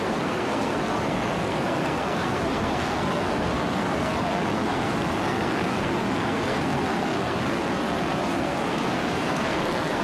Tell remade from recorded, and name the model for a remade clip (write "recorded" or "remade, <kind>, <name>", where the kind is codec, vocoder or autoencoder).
remade, codec, SNAC